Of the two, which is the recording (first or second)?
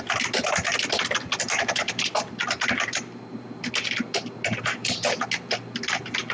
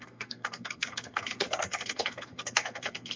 first